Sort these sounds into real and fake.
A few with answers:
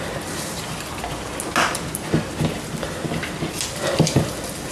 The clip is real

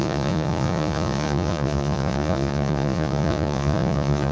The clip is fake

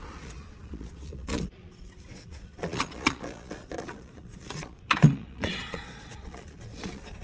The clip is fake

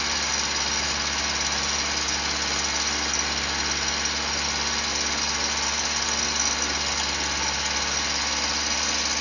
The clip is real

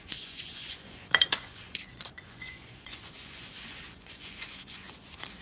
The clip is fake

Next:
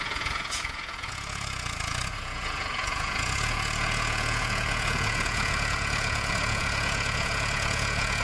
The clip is fake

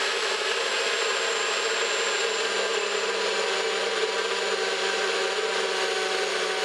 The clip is real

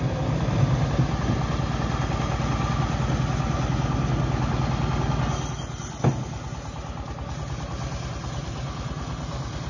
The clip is real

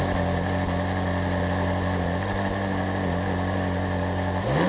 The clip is real